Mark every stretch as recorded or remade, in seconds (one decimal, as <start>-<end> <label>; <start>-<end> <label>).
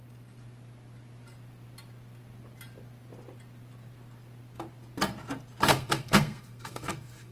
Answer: 0.0-5.7 recorded; 5.7-7.3 remade